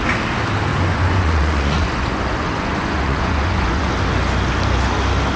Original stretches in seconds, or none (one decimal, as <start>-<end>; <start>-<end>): 0.0-0.7; 3.9-5.4

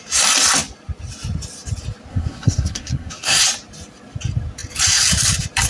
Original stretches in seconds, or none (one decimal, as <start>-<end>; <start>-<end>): 0.0-2.1; 3.4-5.7

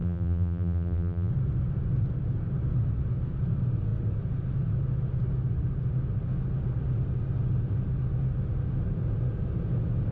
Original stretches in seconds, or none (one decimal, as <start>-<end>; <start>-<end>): 1.3-10.1

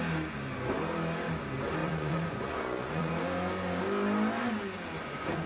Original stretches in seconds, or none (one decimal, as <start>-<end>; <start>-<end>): 0.0-1.8; 3.1-5.0

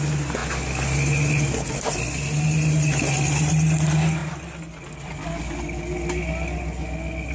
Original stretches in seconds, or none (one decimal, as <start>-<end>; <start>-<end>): 0.0-7.3

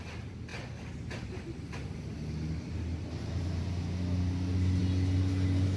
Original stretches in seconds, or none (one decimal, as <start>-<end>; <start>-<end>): 0.0-5.8

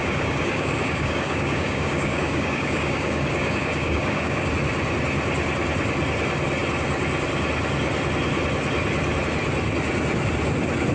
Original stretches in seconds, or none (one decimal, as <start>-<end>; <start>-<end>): 4.5-10.9

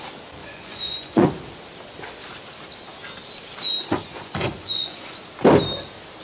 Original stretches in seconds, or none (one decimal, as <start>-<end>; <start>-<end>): 0.0-0.4; 1.3-3.7; 5.1-6.2